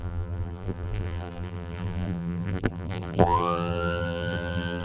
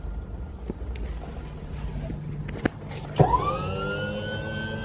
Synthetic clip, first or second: first